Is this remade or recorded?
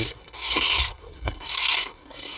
remade